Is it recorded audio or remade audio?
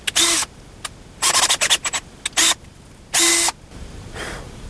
recorded